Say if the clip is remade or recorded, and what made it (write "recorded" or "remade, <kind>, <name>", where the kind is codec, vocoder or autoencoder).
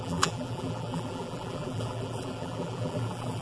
remade, vocoder, BigVGAN v2